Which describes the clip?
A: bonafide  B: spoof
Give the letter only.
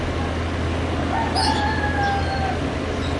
A